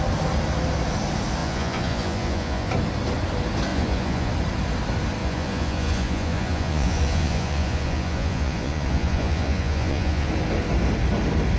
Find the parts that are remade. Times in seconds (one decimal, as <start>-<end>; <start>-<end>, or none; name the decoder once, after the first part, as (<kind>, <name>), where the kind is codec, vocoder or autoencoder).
1.4-2.7 (vocoder, Vocos); 3.7-4.3; 5.2-10.3